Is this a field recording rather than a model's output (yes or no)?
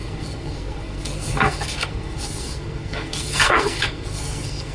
no